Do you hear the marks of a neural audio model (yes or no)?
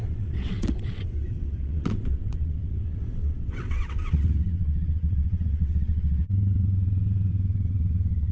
yes